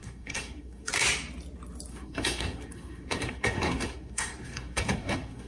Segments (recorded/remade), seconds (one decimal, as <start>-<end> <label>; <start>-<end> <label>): 0.0-0.9 remade; 0.9-1.9 recorded; 1.9-5.5 remade